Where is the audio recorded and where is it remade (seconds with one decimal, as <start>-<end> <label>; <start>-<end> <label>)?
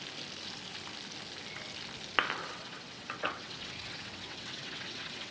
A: 0.0-2.4 recorded; 2.4-5.3 remade